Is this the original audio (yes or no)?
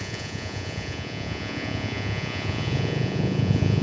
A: no